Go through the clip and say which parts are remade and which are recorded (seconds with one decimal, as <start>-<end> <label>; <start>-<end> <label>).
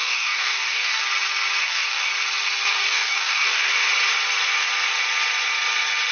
0.0-1.0 remade; 1.0-1.6 recorded; 1.6-2.1 remade; 2.1-2.7 recorded; 2.7-3.7 remade; 3.7-6.1 recorded